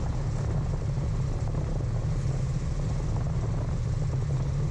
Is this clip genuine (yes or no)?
yes